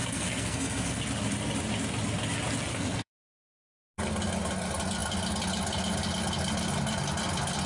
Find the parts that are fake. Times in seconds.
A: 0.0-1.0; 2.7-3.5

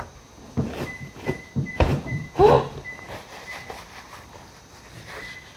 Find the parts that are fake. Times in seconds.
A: 0.0-5.6

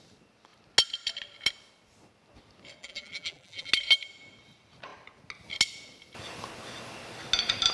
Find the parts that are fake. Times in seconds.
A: 2.8-3.7

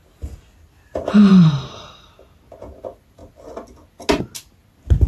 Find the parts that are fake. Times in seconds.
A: none

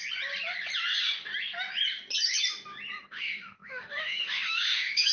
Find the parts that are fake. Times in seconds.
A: 3.1-5.1